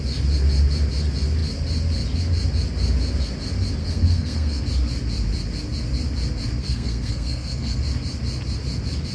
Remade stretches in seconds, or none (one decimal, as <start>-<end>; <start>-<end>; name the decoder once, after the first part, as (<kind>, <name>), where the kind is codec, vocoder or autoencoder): 3.8-4.6 (codec, SNAC); 6.6-7.8